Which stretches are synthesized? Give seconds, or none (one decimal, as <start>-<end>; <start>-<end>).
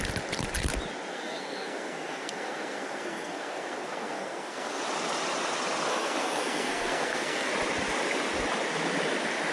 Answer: 1.1-4.8; 5.9-7.5